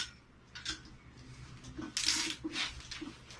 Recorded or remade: recorded